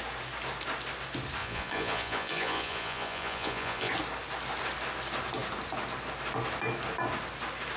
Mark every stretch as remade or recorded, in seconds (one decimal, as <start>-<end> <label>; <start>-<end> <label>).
0.0-1.4 recorded; 1.4-3.9 remade; 3.9-7.8 recorded